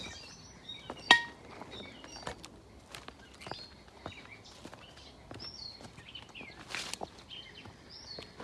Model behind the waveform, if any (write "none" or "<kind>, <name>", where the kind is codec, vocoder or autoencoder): none